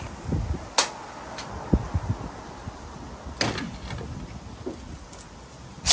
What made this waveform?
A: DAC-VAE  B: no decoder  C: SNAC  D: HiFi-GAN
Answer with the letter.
B